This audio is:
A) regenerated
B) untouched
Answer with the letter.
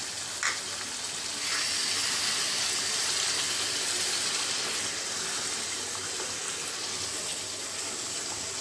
B